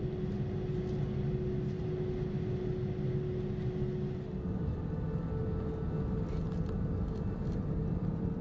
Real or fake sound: real